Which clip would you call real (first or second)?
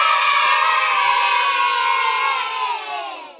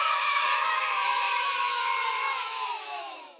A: first